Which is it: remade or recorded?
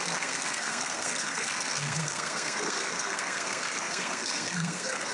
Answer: remade